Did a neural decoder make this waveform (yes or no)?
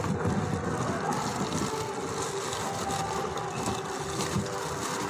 no